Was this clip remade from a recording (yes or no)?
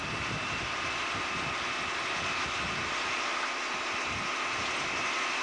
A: no